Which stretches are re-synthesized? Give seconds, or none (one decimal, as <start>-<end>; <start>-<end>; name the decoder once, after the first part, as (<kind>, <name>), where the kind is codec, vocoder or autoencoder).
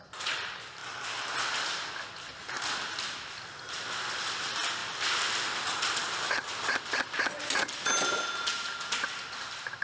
4.8-7.9 (vocoder, BigVGAN v2)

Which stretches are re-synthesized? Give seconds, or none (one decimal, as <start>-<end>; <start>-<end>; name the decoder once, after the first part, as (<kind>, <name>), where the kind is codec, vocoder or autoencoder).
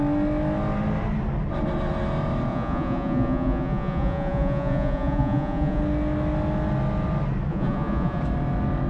2.5-5.8 (vocoder, Vocos); 7.5-8.2